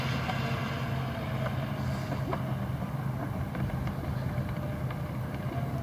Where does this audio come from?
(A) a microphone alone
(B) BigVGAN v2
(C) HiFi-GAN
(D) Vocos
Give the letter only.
A